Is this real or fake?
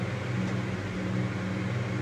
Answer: real